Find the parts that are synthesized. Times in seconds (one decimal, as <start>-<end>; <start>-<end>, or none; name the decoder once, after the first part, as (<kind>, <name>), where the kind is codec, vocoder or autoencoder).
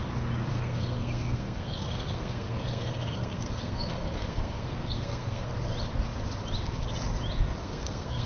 0.5-5.5 (codec, SNAC); 7.6-8.3